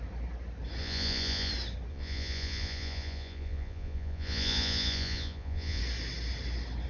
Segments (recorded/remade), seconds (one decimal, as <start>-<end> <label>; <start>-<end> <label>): 0.0-0.8 recorded; 0.8-1.5 remade; 1.5-1.9 recorded; 1.9-5.8 remade; 5.8-6.9 recorded